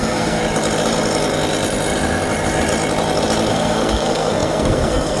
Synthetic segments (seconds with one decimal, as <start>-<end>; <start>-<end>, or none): 0.0-0.4; 3.5-5.2